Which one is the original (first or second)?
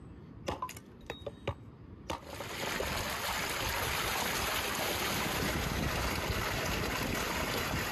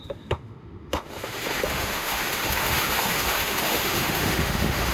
first